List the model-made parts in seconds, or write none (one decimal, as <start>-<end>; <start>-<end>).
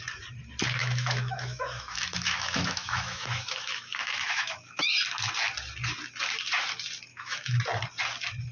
0.8-4.9; 7.1-7.6